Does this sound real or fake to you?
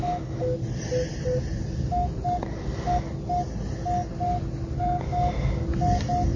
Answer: real